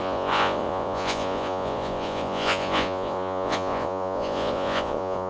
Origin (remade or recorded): remade